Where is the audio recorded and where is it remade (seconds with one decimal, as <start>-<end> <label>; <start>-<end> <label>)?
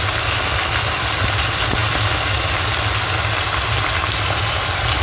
0.0-5.0 recorded